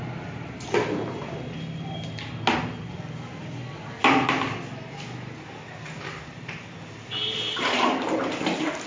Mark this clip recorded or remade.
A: recorded